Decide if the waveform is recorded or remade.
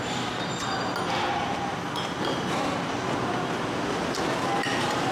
recorded